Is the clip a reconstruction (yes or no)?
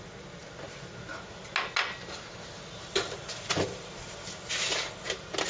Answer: no